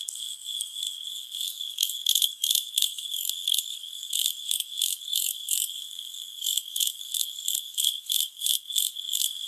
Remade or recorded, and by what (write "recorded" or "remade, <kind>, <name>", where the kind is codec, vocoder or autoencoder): remade, codec, SNAC